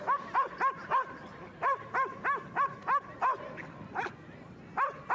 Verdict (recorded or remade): recorded